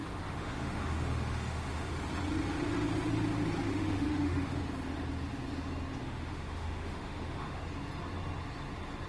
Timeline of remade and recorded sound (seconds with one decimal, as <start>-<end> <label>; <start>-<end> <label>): 0.0-1.9 remade; 1.9-3.7 recorded; 3.7-4.6 remade; 4.6-6.0 recorded; 6.0-7.6 remade; 7.6-9.1 recorded